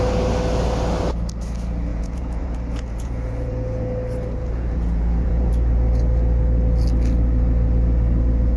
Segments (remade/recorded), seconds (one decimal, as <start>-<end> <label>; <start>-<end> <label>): 0.0-1.9 recorded; 1.9-3.8 remade; 3.8-4.4 recorded; 4.4-5.5 remade; 5.5-8.6 recorded